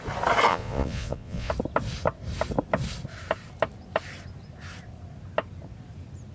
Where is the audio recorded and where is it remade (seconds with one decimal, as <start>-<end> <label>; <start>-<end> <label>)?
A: 0.0-0.5 recorded; 0.5-1.5 remade; 1.5-6.3 recorded